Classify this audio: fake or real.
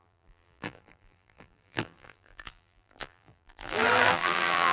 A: fake